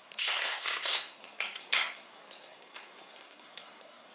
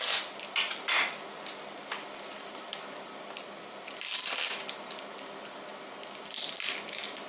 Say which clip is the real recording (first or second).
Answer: second